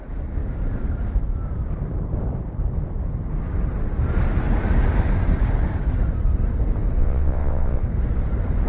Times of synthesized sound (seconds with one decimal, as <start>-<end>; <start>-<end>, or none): 7.0-7.8